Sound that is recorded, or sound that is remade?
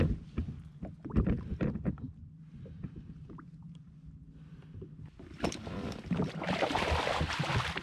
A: remade